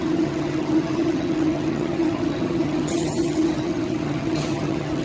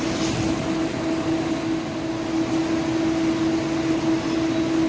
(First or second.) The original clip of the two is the second